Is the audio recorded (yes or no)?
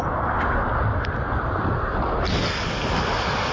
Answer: yes